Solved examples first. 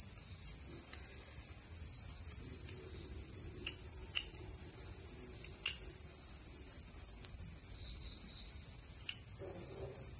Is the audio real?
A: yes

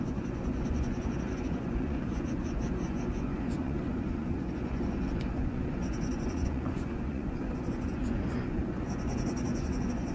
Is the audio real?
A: no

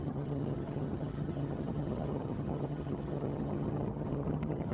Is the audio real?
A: no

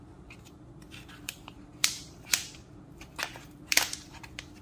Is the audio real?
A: no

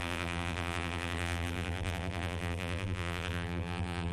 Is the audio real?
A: no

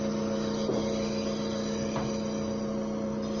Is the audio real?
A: yes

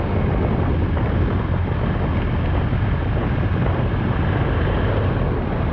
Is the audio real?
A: yes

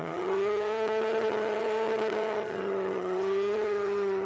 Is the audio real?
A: no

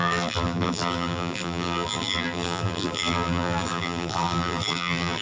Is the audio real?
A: no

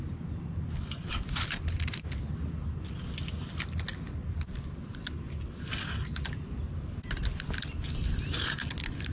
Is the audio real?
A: yes